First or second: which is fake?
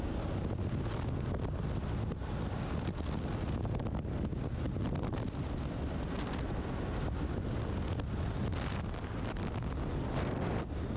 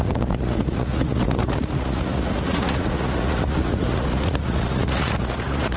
second